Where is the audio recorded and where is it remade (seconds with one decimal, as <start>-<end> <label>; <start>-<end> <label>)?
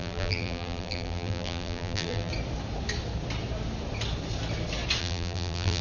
0.0-2.3 remade; 2.3-5.0 recorded; 5.0-5.8 remade